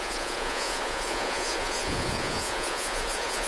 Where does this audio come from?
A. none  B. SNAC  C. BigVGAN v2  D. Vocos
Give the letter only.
D